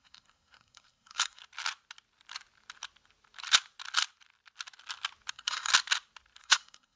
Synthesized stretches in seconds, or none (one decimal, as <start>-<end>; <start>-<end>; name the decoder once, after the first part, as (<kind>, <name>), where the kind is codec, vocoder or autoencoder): 0.0-1.4 (codec, SNAC); 5.3-5.7; 6.4-7.0